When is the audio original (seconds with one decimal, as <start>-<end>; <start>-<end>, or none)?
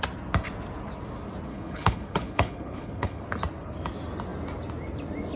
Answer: 0.0-1.5; 3.2-5.4